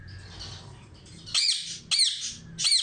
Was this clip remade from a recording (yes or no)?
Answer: no